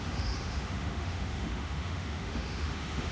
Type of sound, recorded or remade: remade